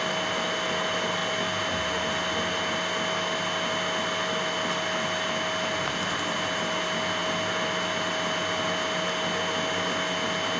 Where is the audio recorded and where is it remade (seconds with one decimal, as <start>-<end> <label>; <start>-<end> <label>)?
0.0-10.6 recorded